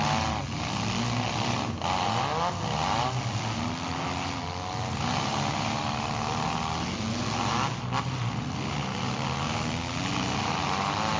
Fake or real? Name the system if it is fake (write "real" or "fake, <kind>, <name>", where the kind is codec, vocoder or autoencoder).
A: real